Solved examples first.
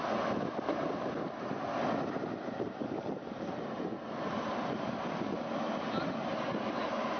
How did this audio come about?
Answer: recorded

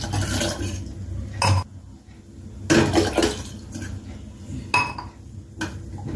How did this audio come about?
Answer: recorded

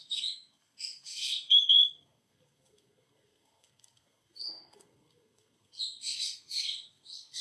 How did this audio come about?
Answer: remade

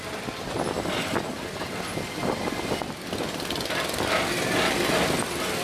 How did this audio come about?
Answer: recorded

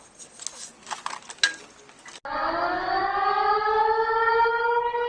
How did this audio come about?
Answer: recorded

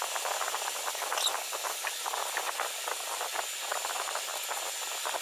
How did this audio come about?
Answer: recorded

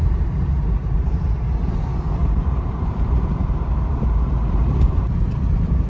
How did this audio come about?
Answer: remade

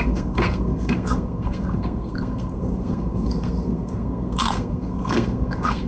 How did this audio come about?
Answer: remade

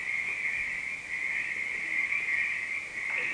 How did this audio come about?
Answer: recorded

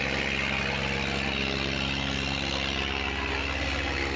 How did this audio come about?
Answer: recorded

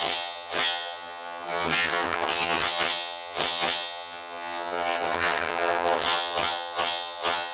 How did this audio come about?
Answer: remade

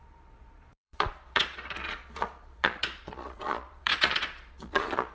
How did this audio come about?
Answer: remade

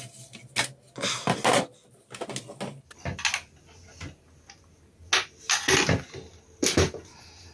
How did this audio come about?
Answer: recorded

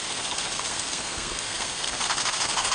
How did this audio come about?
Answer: remade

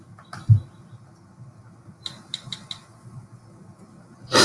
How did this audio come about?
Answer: recorded